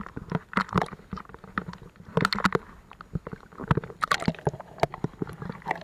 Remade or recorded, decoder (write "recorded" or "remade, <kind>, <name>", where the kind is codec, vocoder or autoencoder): recorded